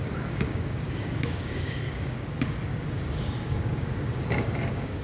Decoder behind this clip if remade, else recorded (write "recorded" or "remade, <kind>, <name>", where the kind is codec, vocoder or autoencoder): remade, codec, DAC